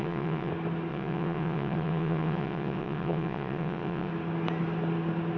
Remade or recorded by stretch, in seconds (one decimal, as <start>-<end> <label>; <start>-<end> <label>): 0.0-0.5 remade; 0.5-0.9 recorded; 0.9-4.1 remade; 4.1-5.4 recorded